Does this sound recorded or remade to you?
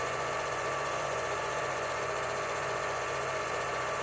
remade